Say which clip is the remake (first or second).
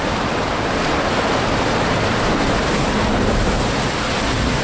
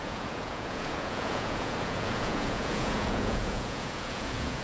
second